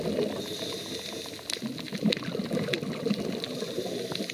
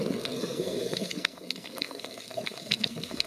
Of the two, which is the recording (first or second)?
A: first